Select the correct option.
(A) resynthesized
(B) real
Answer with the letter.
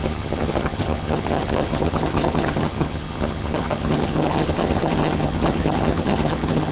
A